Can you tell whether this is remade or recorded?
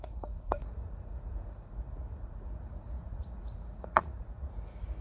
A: remade